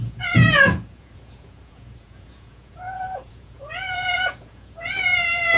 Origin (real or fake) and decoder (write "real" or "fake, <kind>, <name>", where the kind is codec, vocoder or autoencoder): fake, vocoder, Vocos